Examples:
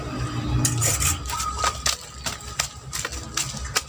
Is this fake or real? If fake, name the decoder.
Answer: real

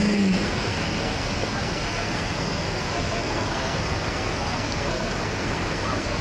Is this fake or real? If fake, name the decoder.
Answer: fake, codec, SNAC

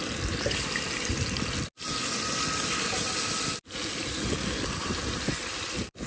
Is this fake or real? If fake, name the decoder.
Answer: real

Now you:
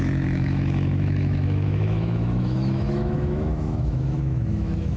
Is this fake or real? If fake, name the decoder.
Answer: fake, autoencoder, DAC-VAE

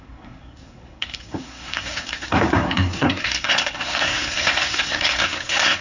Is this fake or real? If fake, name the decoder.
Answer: fake, codec, SNAC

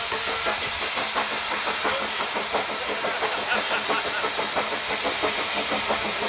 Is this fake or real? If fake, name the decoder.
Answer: real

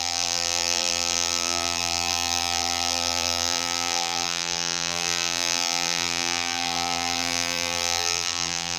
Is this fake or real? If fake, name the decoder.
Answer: fake, vocoder, BigVGAN v2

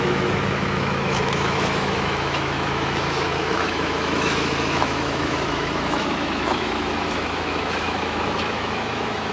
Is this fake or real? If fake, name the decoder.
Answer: fake, autoencoder, DAC-VAE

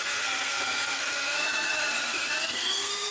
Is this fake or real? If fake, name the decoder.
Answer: fake, codec, SNAC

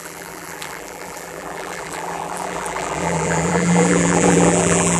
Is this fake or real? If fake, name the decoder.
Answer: fake, vocoder, BigVGAN v2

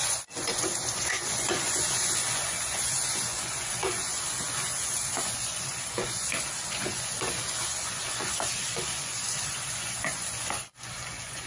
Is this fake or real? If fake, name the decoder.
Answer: fake, vocoder, Vocos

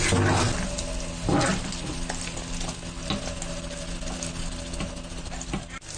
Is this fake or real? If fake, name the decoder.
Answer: real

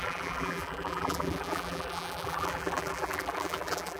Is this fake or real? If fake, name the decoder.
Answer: fake, vocoder, BigVGAN v2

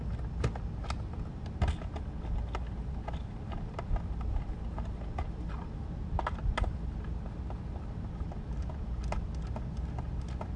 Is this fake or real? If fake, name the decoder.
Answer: real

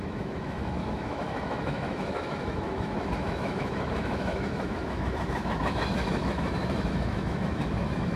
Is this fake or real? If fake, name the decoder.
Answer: fake, autoencoder, DAC-VAE